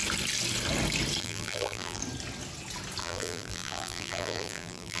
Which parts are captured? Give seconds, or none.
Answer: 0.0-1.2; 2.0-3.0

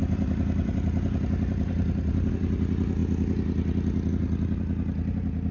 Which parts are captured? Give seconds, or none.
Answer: 2.3-5.5

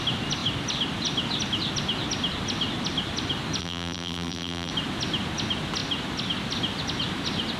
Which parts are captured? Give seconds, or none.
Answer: 0.0-3.6; 4.7-7.6

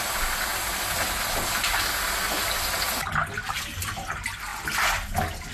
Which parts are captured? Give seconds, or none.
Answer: 0.0-5.5

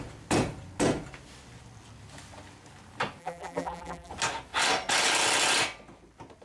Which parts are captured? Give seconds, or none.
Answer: 0.0-3.2; 4.1-6.4

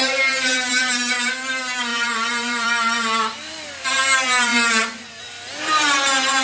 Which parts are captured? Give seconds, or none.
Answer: none

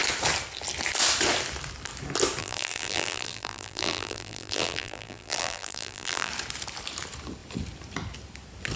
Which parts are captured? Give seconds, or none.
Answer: 0.0-2.4; 6.3-8.8